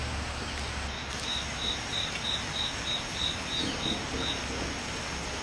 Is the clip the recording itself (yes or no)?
yes